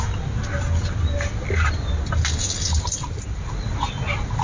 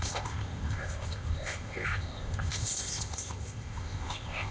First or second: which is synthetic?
second